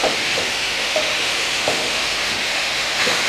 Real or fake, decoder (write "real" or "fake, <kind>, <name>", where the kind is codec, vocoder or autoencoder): fake, autoencoder, DAC-VAE